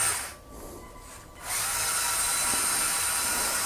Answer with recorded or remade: recorded